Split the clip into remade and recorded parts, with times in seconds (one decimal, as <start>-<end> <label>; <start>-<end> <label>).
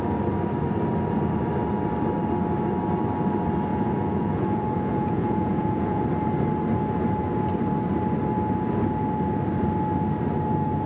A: 0.0-3.7 recorded; 3.7-6.0 remade; 6.0-10.9 recorded